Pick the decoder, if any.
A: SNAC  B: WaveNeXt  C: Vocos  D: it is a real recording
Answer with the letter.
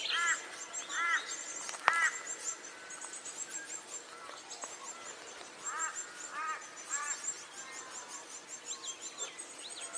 D